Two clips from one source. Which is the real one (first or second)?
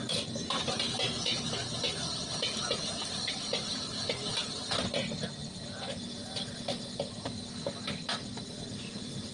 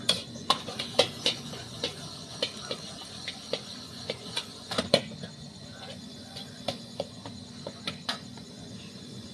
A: first